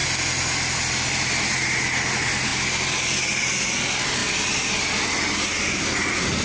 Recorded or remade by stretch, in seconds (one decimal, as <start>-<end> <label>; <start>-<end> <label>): 0.0-6.4 recorded